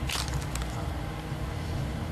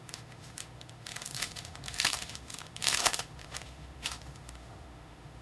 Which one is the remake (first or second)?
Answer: second